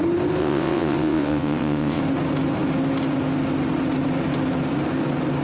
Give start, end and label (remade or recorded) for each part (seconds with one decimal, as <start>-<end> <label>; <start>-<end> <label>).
0.0-0.4 recorded; 0.4-2.0 remade; 2.0-5.4 recorded